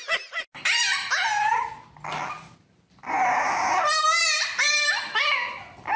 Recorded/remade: recorded